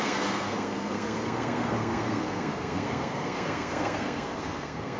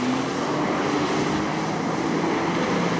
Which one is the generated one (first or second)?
first